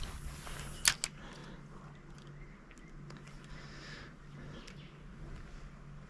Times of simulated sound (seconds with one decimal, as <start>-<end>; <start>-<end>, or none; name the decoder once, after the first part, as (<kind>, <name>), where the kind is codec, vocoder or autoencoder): none